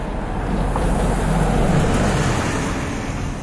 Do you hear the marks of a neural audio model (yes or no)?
no